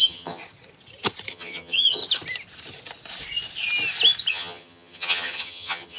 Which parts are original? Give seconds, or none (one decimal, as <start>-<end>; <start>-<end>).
0.4-1.3; 2.0-4.3